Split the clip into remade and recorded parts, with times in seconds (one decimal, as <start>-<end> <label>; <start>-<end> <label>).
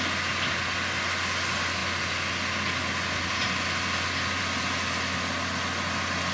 0.0-6.3 recorded